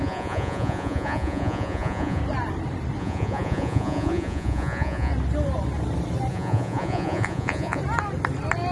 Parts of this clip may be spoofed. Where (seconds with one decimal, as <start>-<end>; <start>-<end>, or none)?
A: 0.0-2.2; 3.0-5.1; 6.3-7.8